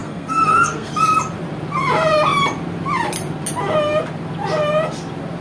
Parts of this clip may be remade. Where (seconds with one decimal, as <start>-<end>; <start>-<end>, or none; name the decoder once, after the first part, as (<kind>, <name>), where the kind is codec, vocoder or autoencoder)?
0.0-0.9 (codec, SNAC)